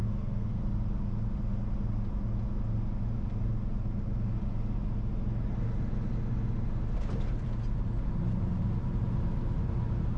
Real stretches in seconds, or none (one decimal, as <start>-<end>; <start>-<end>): 0.6-10.2